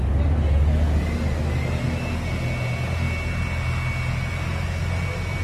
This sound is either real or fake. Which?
real